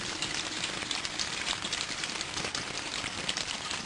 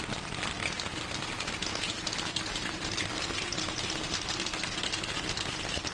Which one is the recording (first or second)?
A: second